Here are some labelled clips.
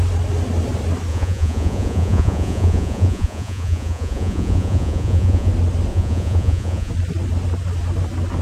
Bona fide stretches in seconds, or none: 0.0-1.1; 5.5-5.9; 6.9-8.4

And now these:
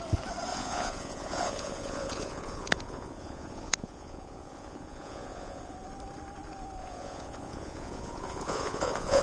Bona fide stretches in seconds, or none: 0.0-0.5; 5.7-6.8

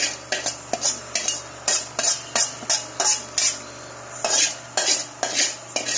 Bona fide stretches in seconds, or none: 0.0-6.0

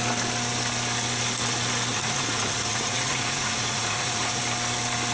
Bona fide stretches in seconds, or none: 0.0-1.9; 4.4-5.1

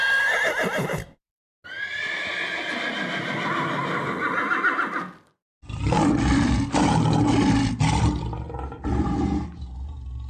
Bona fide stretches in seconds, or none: 0.0-10.3

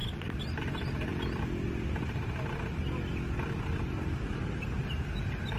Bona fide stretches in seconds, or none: 0.0-5.6

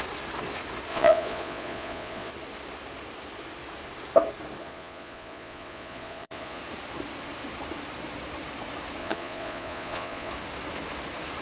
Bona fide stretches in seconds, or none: 0.0-0.9; 2.3-4.6; 6.6-9.0; 10.3-11.4

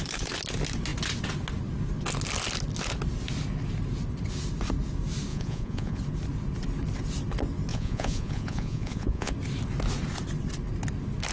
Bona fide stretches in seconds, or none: 0.0-5.3; 6.0-7.7; 9.3-11.3